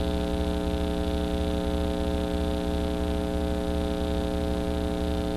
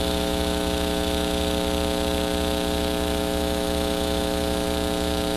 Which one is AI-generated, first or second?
second